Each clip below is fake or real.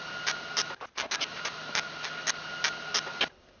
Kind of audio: real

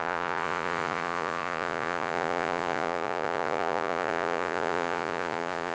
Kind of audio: fake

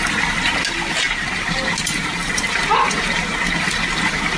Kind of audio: real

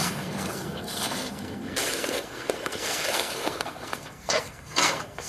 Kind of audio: fake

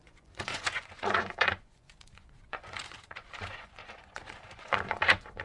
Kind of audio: fake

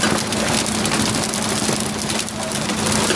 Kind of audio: real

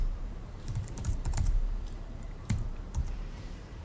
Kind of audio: fake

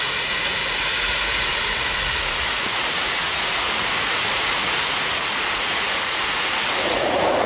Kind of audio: fake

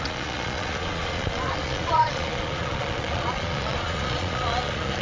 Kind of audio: fake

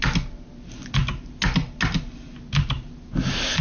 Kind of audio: real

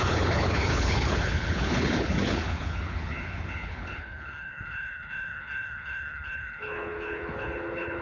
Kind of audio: fake